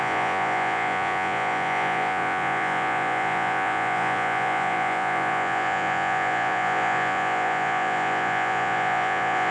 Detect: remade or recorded remade